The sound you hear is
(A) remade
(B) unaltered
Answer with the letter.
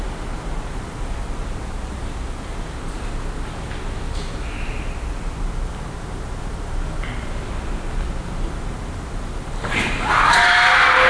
B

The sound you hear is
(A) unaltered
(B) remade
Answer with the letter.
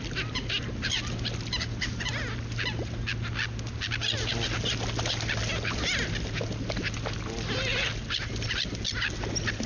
A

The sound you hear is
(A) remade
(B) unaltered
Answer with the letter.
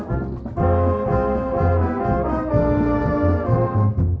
B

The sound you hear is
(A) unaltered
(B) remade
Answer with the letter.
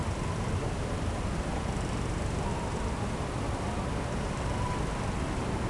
A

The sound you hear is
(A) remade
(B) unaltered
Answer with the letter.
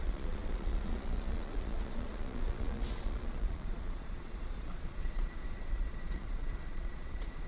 A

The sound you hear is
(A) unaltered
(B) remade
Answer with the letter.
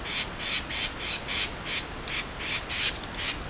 A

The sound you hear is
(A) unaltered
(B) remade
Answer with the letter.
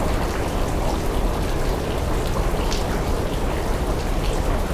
A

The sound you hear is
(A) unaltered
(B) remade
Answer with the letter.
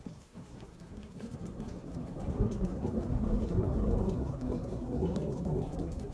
B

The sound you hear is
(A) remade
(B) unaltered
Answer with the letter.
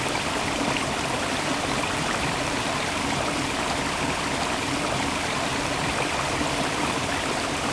A